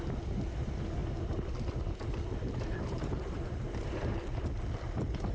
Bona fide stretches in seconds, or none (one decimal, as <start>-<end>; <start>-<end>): 0.0-1.0; 1.7-5.3